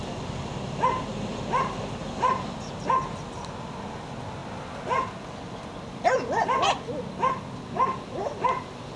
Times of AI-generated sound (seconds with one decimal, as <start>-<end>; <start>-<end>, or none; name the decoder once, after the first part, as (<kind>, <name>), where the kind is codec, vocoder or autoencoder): none